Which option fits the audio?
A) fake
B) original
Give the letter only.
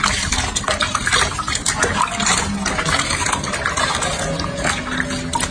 B